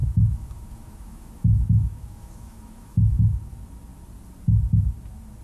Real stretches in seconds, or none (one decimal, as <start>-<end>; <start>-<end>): 3.2-5.4